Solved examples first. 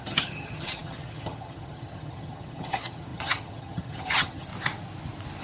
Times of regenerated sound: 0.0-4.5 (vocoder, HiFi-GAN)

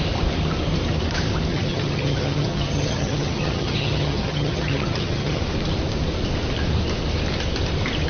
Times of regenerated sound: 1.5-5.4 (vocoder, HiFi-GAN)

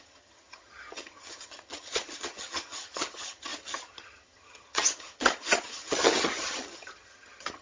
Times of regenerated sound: 0.0-7.6 (vocoder, HiFi-GAN)